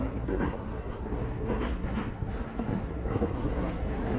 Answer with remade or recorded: remade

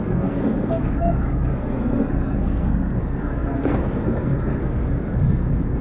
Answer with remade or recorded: remade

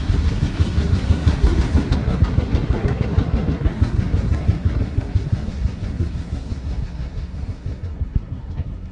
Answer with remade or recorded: remade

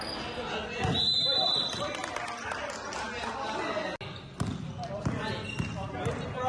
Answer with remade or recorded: recorded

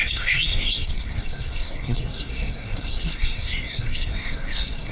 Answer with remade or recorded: remade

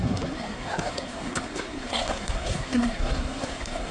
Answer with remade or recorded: remade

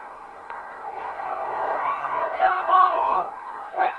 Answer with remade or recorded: remade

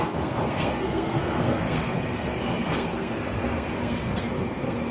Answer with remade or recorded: remade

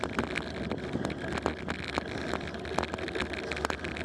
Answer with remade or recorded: recorded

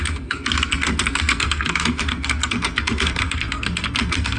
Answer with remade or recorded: remade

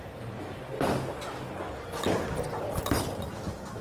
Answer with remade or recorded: recorded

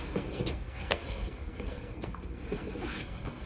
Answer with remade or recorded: remade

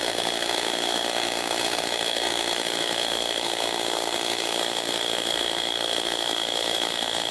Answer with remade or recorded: remade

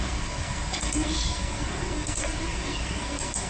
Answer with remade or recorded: remade